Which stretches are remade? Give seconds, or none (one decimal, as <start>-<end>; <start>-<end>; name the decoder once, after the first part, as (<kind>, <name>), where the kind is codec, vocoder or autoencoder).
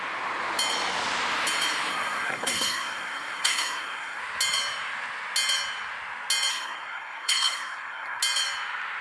1.9-4.2 (codec, SNAC); 6.5-8.2